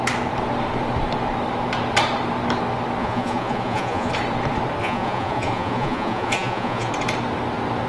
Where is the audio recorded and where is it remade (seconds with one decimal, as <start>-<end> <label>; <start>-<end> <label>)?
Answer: 0.0-3.0 recorded; 3.0-4.1 remade; 4.1-4.8 recorded; 4.8-6.9 remade; 6.9-7.9 recorded